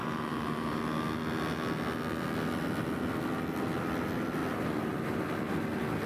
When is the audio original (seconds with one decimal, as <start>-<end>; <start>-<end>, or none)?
0.8-6.1